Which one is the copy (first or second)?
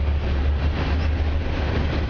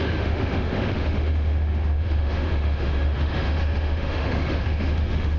second